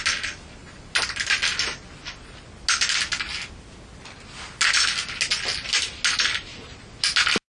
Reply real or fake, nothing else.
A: real